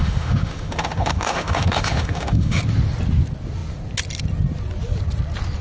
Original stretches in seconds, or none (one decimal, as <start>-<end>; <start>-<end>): 2.6-5.6